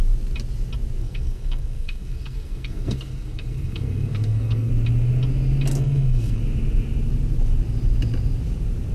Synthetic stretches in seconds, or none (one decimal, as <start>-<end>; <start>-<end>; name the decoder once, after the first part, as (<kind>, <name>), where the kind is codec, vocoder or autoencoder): 1.0-4.7 (codec, SNAC); 5.7-6.4